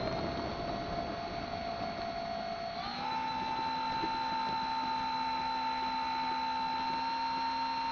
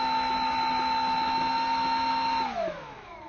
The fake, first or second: second